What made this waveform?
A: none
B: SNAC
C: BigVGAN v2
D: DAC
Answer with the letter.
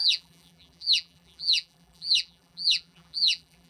C